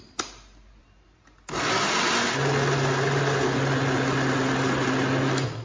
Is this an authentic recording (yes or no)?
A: yes